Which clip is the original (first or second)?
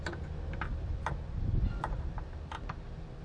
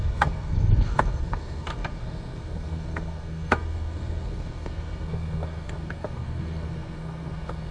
first